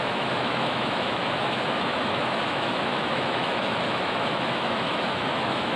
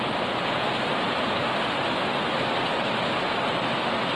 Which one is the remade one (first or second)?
first